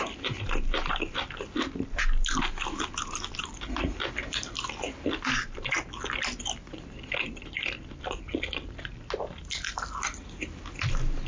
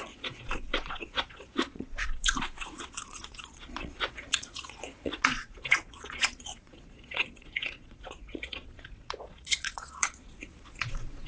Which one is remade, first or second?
second